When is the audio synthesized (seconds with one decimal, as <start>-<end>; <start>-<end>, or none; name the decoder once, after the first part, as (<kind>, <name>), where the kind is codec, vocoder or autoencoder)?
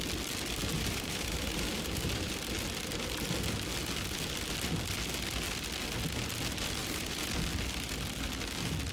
0.6-2.3 (vocoder, BigVGAN v2); 6.8-7.3